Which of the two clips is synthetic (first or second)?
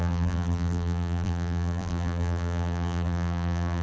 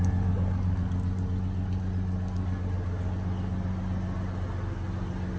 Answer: first